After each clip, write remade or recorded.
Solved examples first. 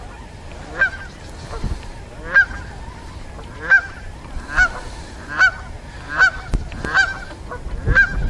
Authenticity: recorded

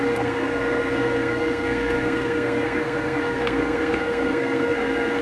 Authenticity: remade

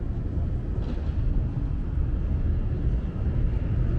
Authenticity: recorded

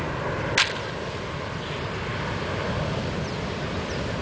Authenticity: recorded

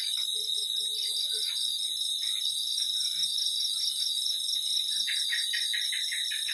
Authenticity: recorded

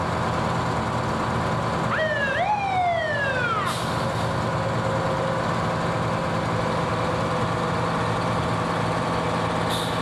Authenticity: recorded